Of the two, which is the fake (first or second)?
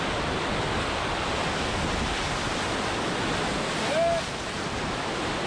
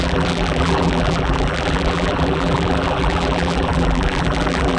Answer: second